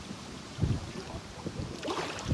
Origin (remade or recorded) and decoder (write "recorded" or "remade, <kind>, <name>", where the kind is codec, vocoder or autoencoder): remade, vocoder, BigVGAN v2